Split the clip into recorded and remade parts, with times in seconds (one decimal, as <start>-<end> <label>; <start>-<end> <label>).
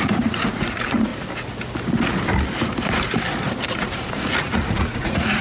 0.0-1.1 remade; 1.1-3.7 recorded; 3.7-5.4 remade